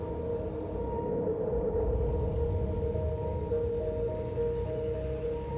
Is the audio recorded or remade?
recorded